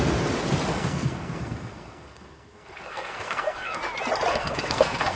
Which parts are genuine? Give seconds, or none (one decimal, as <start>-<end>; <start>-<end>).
0.0-0.7; 3.8-4.3